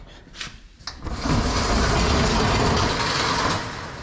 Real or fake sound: real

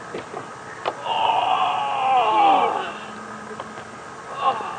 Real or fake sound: real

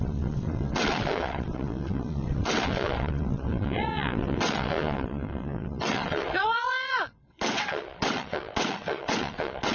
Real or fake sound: fake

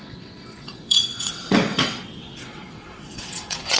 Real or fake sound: fake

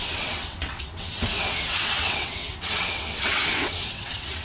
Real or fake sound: fake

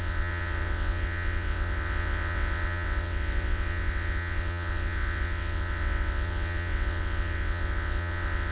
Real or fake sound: fake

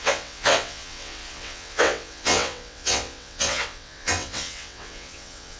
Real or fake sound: fake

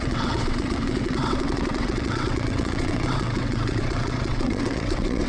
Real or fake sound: fake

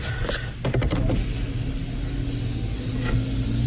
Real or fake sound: real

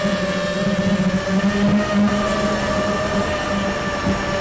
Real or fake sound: real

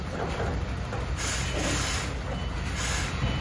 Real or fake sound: real